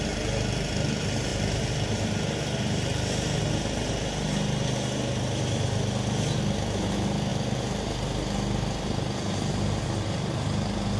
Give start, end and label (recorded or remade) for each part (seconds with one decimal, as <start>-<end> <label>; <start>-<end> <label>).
0.0-11.0 recorded